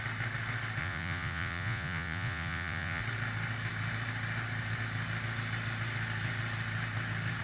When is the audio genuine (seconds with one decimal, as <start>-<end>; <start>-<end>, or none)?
0.0-0.8; 3.0-7.4